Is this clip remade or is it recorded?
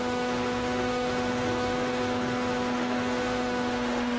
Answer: remade